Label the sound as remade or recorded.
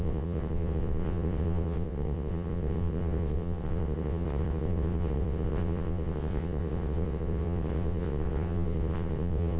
remade